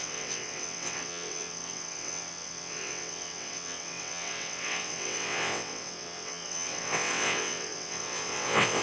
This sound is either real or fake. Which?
fake